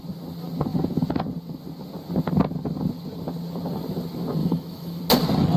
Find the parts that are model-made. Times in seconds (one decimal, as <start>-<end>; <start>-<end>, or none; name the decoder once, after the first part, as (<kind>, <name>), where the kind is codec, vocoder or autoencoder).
4.4-5.0 (autoencoder, DAC-VAE)